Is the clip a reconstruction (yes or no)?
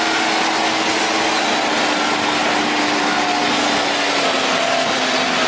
no